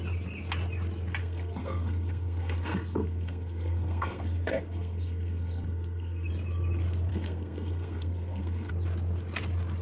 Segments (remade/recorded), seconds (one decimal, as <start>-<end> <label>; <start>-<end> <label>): 0.0-1.2 recorded; 1.2-6.3 remade; 6.3-7.1 recorded; 7.1-8.7 remade; 8.7-9.8 recorded